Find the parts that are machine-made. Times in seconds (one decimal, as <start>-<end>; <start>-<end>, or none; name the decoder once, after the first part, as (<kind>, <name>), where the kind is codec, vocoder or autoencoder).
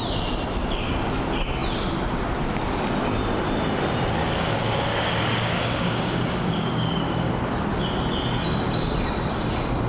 4.2-7.3 (codec, DAC)